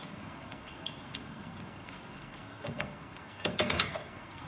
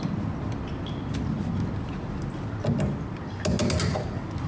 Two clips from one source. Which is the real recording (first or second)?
second